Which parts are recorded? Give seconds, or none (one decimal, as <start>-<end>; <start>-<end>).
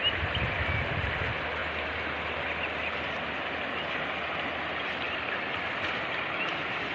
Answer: 0.0-6.9